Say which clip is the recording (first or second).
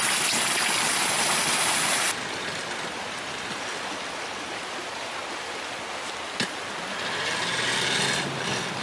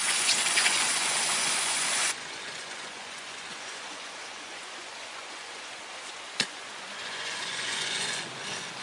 first